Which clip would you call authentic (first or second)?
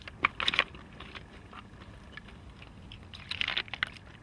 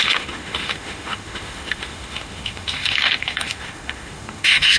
first